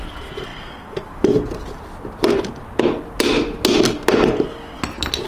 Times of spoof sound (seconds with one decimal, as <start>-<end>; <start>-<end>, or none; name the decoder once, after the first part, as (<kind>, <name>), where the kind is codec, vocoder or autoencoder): none